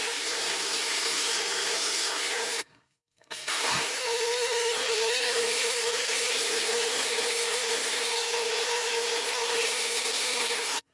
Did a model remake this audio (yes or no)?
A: yes